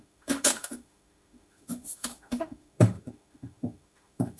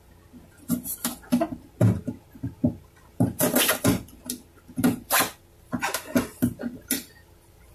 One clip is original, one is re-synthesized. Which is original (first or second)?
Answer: second